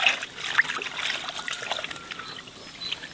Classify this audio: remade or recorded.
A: recorded